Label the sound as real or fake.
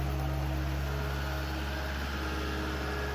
real